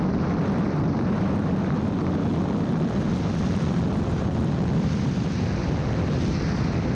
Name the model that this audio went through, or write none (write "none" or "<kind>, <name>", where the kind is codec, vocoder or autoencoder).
vocoder, BigVGAN v2